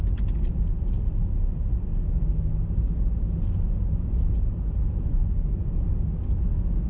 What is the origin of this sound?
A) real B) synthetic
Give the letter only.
A